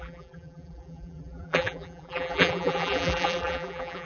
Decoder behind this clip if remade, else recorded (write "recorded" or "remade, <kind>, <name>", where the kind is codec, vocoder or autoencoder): remade, vocoder, BigVGAN v2